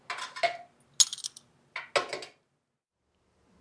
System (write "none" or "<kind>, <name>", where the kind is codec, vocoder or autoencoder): none